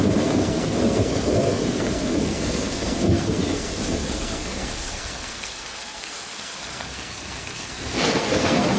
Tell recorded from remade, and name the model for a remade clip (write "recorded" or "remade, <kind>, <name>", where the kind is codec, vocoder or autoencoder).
remade, codec, SNAC